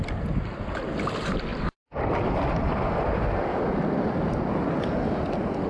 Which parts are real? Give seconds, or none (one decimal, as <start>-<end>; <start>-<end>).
0.0-1.5; 2.8-5.7